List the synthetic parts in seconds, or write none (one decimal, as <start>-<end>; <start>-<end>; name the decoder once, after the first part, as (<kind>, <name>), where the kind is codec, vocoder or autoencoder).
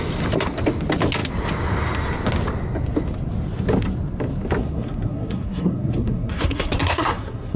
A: 4.6-7.6 (codec, SNAC)